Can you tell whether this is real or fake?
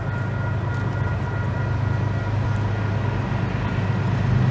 real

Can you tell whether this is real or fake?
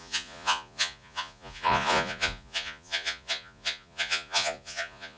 fake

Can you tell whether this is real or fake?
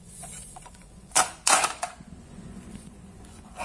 fake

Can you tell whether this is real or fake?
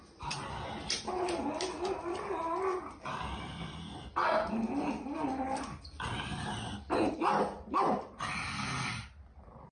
real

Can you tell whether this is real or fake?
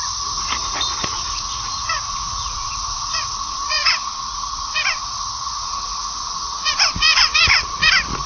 fake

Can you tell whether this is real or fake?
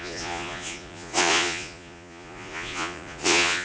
fake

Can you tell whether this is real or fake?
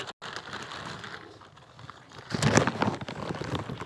real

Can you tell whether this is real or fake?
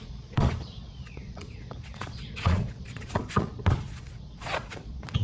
fake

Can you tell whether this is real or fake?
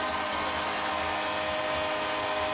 real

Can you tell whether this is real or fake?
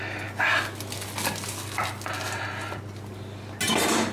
real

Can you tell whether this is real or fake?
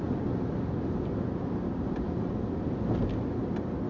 real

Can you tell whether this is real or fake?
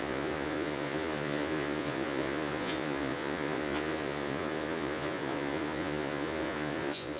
fake